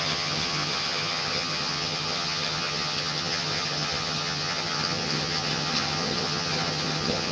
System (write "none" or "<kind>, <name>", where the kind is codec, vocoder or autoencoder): vocoder, HiFi-GAN